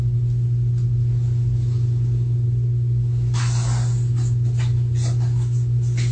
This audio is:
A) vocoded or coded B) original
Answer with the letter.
B